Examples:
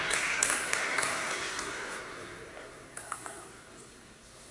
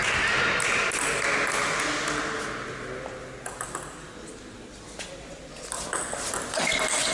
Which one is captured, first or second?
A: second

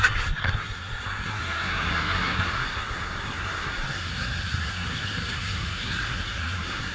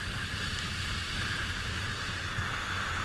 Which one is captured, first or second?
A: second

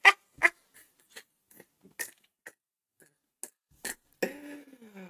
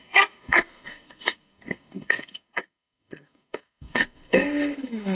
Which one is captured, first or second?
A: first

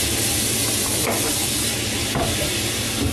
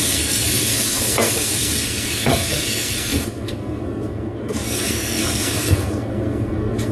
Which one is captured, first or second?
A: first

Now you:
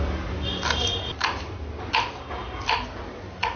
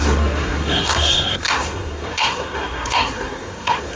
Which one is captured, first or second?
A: first